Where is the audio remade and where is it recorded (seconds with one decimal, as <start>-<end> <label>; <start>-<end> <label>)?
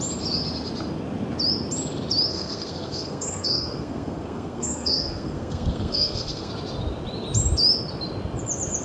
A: 0.0-2.3 recorded; 2.3-6.5 remade; 6.5-8.8 recorded